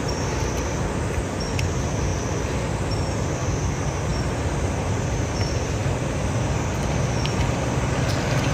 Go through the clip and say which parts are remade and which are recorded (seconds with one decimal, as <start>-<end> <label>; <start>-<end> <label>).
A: 0.0-8.5 recorded